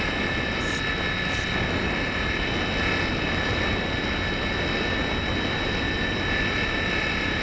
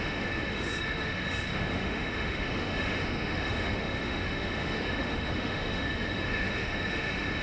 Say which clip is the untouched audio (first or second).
first